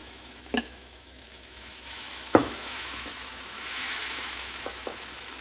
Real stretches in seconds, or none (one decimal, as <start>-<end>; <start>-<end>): none